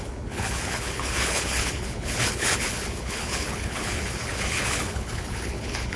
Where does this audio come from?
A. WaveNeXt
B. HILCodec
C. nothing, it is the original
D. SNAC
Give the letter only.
B